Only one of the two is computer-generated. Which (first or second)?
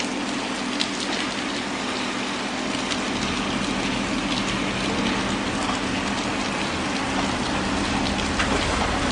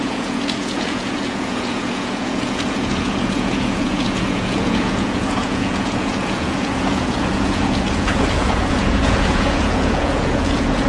second